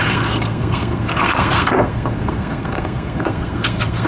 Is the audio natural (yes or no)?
no